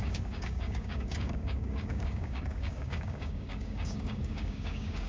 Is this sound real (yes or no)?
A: no